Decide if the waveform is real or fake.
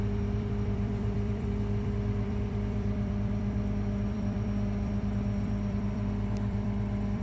fake